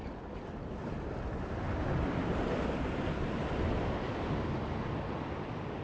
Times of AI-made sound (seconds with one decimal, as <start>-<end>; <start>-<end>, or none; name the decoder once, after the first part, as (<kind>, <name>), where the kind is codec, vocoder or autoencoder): none